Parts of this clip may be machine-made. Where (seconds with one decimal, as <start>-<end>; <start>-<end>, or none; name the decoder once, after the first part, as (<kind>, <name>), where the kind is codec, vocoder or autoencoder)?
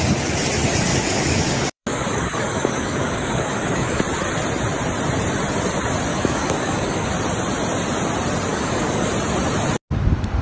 0.9-4.0 (codec, DAC); 6.1-7.1; 8.5-9.1